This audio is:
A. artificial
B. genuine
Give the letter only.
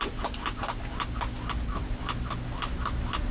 B